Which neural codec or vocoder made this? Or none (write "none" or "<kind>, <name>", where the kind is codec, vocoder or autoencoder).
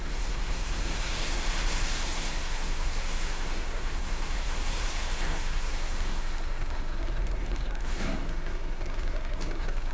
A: codec, SNAC